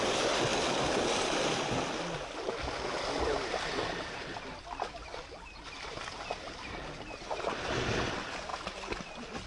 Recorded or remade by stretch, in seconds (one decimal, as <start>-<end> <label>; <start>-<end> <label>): 0.0-9.5 recorded